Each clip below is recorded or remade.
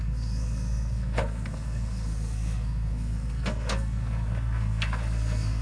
remade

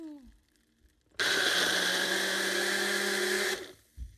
recorded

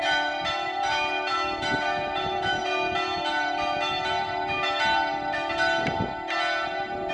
recorded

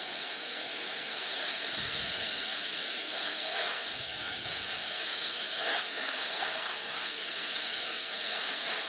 remade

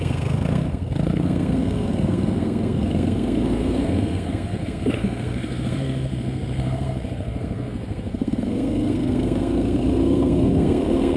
remade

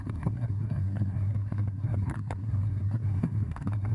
remade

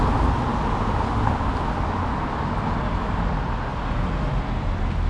recorded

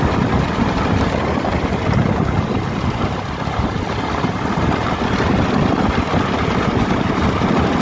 recorded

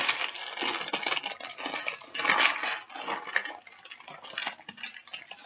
recorded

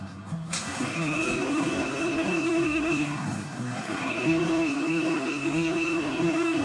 remade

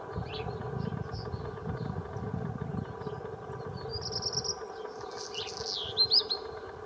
recorded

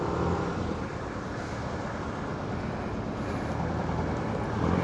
recorded